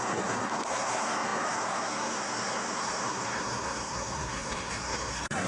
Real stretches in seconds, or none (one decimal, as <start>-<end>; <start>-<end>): none